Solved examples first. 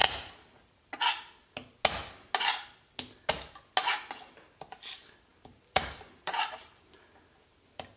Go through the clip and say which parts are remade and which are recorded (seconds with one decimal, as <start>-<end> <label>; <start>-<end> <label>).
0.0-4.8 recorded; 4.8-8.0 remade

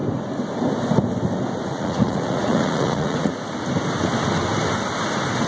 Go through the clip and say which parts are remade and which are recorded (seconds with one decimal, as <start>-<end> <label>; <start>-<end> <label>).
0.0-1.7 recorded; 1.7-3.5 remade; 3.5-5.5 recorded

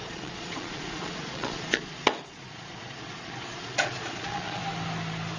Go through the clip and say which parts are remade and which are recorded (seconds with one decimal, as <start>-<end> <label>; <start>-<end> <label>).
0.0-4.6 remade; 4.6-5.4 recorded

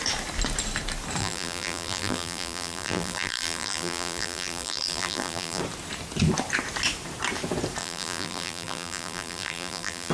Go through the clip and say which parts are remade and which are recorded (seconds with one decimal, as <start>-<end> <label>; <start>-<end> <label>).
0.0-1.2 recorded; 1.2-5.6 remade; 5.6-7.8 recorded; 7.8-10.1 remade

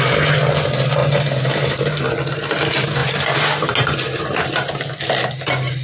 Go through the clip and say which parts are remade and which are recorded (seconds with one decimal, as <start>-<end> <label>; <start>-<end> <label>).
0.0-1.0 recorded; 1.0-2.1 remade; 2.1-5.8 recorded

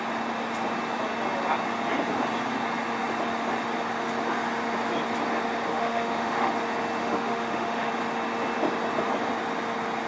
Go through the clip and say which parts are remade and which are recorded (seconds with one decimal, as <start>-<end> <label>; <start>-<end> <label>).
0.0-5.7 recorded; 5.7-6.5 remade; 6.5-7.0 recorded; 7.0-7.9 remade; 7.9-10.1 recorded

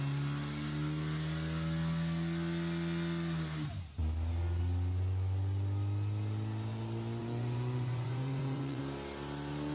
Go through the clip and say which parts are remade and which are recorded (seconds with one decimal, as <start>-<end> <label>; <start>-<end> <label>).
0.0-7.2 recorded; 7.2-8.8 remade; 8.8-9.7 recorded

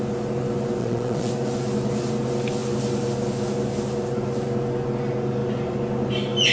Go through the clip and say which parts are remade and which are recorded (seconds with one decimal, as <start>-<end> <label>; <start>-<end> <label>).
0.0-0.8 recorded; 0.8-1.3 remade; 1.3-6.5 recorded